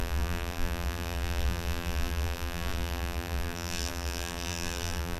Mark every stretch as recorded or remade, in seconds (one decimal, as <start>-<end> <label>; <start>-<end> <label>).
0.0-5.2 remade